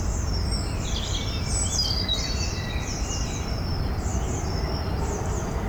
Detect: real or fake fake